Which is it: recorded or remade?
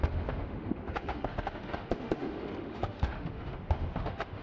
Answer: remade